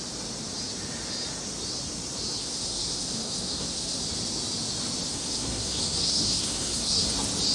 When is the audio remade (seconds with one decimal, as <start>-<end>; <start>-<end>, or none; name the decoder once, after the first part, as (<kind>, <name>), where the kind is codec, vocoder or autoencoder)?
2.4-4.0 (codec, SNAC); 5.1-7.1